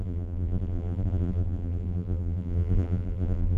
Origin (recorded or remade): remade